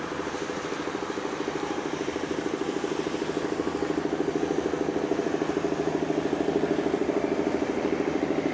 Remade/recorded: recorded